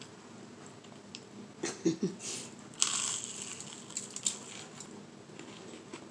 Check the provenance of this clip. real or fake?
real